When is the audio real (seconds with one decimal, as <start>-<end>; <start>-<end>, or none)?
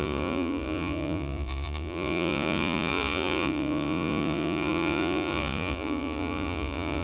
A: none